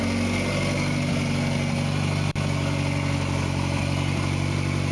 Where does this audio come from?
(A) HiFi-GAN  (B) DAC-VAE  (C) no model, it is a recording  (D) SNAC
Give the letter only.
C